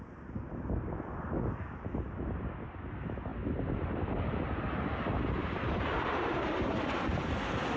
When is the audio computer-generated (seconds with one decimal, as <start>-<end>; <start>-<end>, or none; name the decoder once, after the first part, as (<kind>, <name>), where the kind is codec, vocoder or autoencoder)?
5.4-6.8 (vocoder, BigVGAN v2)